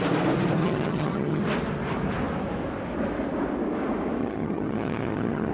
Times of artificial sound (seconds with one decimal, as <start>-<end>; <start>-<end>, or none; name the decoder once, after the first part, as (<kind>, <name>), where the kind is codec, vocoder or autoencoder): 0.6-1.4 (vocoder, HiFi-GAN); 4.2-5.5